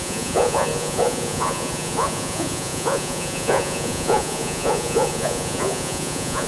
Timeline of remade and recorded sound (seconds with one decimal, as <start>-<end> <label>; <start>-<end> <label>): 0.0-6.5 remade